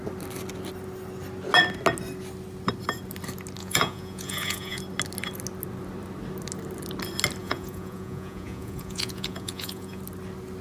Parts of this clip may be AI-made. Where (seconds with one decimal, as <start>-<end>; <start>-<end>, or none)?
3.6-4.8; 7.4-10.0